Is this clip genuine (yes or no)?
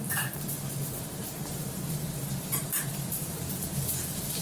no